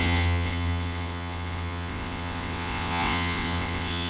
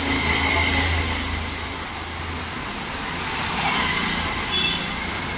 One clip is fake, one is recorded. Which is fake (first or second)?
first